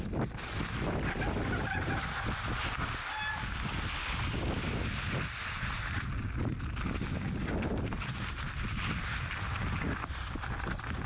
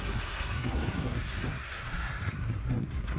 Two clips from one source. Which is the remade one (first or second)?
second